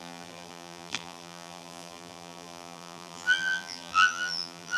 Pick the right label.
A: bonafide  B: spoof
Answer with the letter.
B